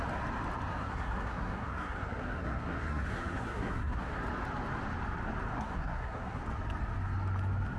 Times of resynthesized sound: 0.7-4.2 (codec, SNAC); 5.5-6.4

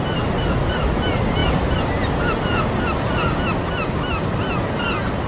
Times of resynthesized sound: none

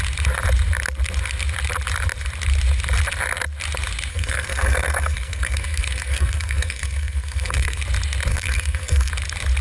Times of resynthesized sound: 4.1-7.8 (codec, SNAC); 8.3-9.1